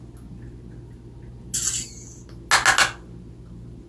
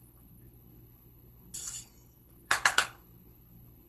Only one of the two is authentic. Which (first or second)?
first